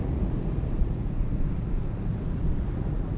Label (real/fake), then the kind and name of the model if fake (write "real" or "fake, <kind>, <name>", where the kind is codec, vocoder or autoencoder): fake, vocoder, Vocos